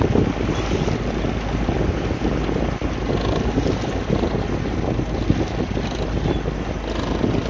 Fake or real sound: real